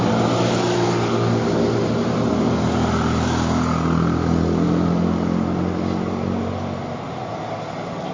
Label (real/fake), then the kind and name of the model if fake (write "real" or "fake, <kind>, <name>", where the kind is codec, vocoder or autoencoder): real